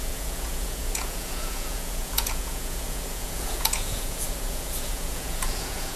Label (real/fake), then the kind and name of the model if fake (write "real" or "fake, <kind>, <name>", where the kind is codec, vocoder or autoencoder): fake, vocoder, Vocos